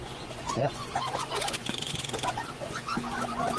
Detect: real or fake fake